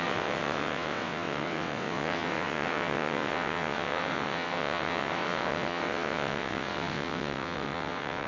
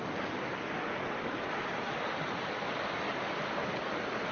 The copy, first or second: first